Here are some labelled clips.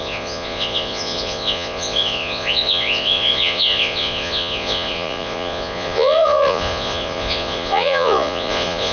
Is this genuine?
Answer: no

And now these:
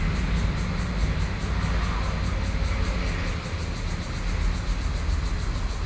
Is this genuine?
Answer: yes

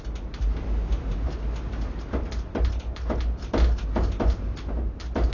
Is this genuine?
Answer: yes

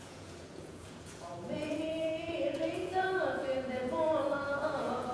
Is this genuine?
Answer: no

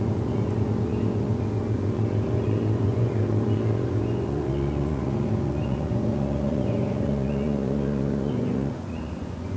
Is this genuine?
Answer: no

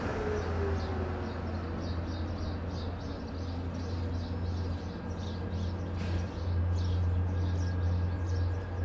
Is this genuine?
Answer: yes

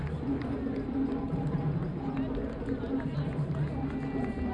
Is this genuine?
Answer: yes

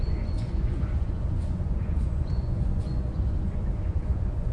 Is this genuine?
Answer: no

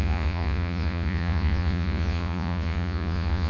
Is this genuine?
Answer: no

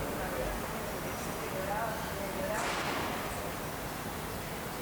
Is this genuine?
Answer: yes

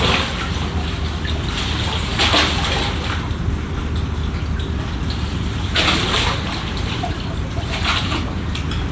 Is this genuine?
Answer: yes